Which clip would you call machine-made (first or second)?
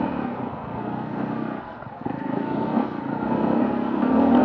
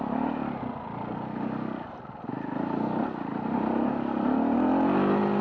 first